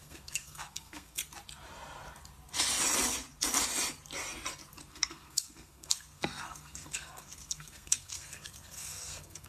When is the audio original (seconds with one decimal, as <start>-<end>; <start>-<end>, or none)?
1.2-4.9